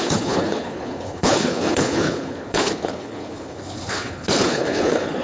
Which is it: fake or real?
fake